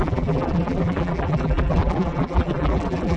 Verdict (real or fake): fake